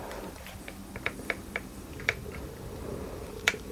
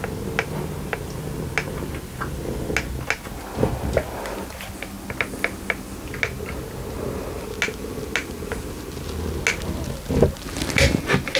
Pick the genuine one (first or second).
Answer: second